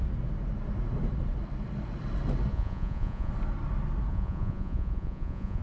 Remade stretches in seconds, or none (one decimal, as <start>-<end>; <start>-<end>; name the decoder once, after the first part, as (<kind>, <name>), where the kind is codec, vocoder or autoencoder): 2.5-3.3 (vocoder, Vocos); 4.1-5.6

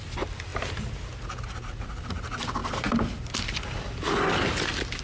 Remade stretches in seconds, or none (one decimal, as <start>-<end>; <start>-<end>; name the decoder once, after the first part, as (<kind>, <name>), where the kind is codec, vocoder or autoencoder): none

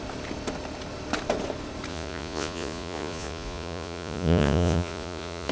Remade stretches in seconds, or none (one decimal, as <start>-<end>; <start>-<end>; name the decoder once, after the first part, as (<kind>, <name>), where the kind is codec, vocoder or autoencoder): 1.9-5.5 (vocoder, Vocos)

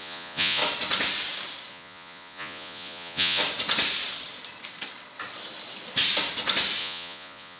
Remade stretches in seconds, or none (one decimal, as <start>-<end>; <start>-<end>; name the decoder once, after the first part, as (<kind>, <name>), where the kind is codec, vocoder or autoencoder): 0.0-0.6 (vocoder, Vocos); 1.7-3.4; 6.8-7.6

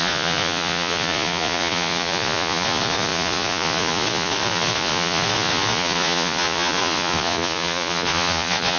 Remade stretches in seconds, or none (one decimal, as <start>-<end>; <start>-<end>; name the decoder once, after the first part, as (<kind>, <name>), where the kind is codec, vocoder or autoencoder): 0.0-8.8 (vocoder, Vocos)

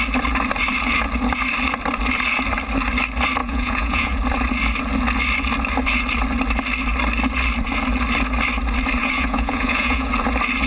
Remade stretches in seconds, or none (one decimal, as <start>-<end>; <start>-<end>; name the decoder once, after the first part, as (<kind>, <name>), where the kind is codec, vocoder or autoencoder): 3.4-4.2 (vocoder, Vocos); 9.0-10.1

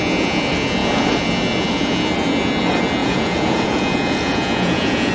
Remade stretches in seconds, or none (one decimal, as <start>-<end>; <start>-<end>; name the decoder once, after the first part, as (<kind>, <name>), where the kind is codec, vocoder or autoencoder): 3.0-5.1 (vocoder, Vocos)

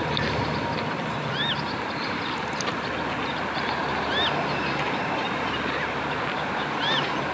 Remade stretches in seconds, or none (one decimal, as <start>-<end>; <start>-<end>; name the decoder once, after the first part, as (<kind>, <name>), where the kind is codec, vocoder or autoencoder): none